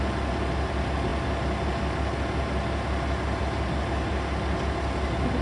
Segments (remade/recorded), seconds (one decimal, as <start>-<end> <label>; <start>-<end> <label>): 0.0-5.4 recorded